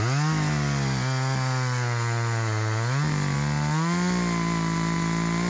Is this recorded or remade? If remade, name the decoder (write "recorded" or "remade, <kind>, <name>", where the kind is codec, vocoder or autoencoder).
recorded